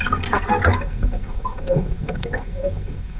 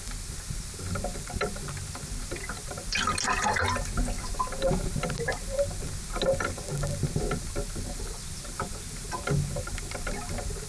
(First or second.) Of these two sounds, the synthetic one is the first